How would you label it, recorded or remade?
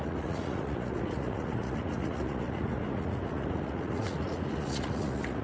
remade